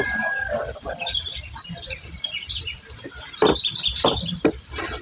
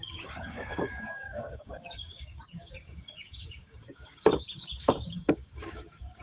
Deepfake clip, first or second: second